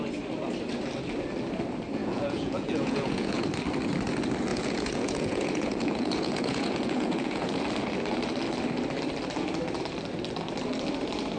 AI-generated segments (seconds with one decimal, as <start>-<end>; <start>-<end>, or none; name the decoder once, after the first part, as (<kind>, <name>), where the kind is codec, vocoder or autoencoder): 2.0-3.4 (vocoder, Vocos); 4.5-7.6